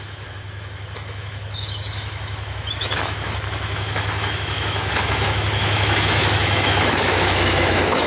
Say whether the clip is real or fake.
fake